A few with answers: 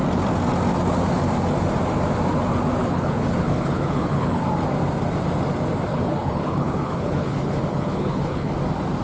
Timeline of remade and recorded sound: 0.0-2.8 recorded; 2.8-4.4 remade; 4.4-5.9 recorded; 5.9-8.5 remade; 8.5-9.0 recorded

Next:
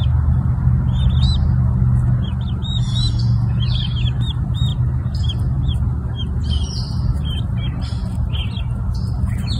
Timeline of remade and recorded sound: 0.0-2.6 recorded; 2.6-3.7 remade; 3.7-9.6 recorded